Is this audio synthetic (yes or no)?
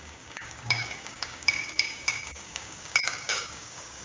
yes